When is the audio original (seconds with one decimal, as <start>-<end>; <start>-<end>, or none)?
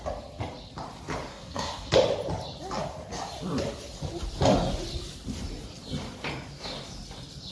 0.0-1.3; 1.9-7.5